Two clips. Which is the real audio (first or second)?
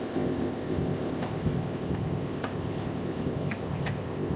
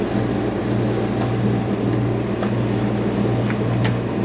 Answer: second